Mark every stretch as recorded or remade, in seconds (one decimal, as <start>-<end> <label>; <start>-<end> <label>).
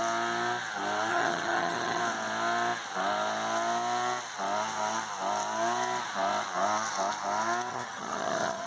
0.0-1.1 recorded; 1.1-2.0 remade; 2.0-7.7 recorded; 7.7-8.7 remade